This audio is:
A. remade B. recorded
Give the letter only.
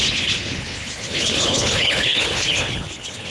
A